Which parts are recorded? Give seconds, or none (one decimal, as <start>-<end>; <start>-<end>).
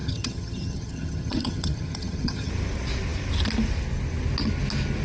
2.5-5.0